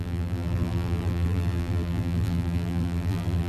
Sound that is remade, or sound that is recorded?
remade